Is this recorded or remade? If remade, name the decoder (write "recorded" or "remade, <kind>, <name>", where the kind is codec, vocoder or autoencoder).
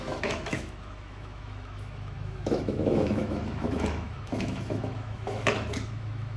remade, autoencoder, DAC-VAE